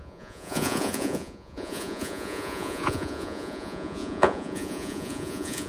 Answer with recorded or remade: remade